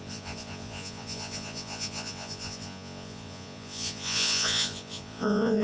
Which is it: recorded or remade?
remade